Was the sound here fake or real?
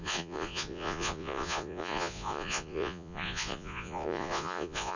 fake